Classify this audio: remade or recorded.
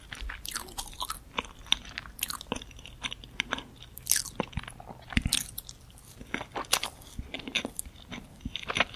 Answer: recorded